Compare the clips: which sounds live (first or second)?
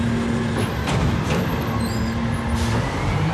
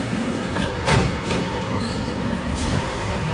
first